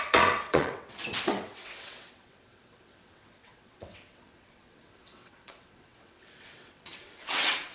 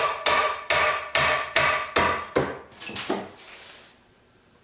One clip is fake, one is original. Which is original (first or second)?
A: second